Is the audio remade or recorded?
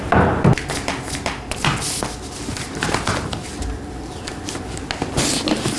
recorded